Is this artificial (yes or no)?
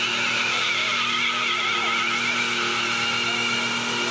no